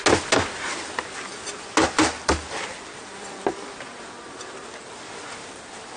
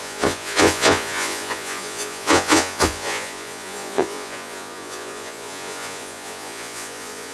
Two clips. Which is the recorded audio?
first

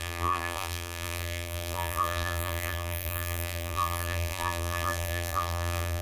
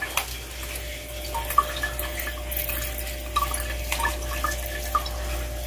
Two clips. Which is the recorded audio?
second